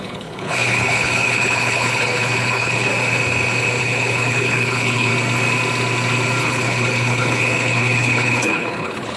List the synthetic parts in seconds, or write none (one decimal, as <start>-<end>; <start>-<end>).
0.0-2.9; 3.8-5.1; 6.4-9.2